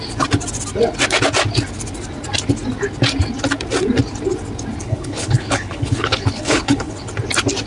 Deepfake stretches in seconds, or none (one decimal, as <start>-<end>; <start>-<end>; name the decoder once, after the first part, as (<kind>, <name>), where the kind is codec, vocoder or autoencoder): 4.8-7.1 (codec, HILCodec)